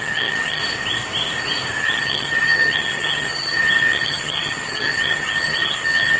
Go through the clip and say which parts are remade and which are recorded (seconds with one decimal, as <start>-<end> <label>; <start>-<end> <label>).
0.0-0.6 remade; 0.6-1.8 recorded; 1.8-6.2 remade